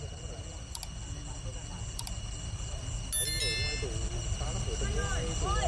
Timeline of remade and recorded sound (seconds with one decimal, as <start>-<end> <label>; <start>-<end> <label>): 0.0-5.7 recorded